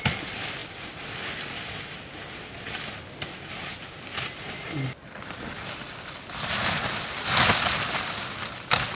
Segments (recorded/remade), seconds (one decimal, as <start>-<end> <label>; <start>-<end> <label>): 0.0-8.9 recorded